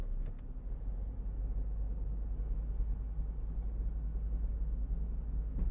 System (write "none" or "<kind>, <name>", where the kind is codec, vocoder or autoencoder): none